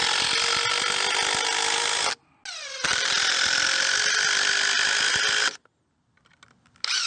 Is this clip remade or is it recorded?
recorded